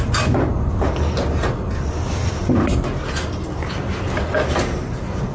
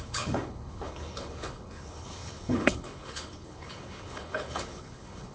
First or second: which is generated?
second